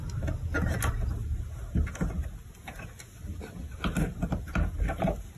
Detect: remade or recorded recorded